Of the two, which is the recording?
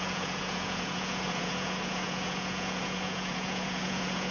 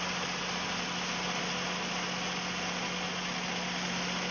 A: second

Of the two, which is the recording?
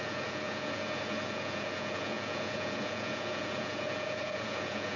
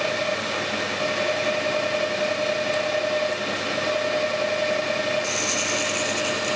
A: second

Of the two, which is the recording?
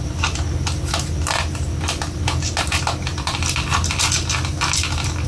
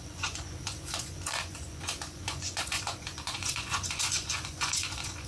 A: first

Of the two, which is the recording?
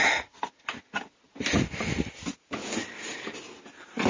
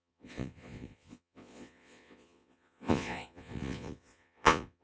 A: first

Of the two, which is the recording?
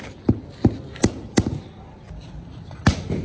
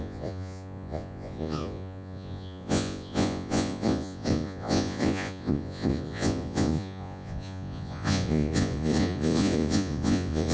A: first